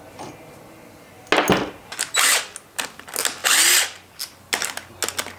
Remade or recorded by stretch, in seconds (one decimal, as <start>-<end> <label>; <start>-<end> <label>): 0.0-5.4 recorded